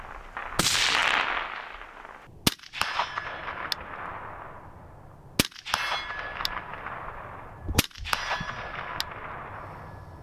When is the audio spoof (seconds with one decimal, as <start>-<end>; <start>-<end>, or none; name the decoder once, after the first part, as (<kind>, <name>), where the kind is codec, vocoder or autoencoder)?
6.7-8.6 (vocoder, BigVGAN v2)